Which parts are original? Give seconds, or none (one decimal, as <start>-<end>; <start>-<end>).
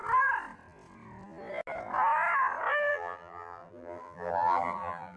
0.0-2.9